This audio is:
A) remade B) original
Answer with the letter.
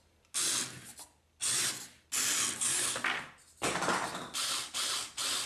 B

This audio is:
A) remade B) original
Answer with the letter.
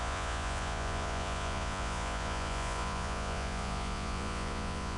A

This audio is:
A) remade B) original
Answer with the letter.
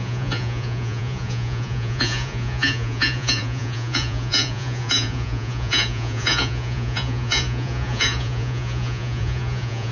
A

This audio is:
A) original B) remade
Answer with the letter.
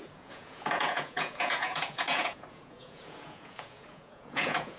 B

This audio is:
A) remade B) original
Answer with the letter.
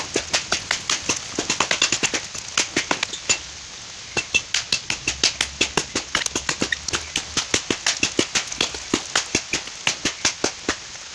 B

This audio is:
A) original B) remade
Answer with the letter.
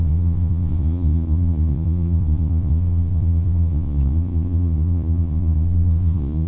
B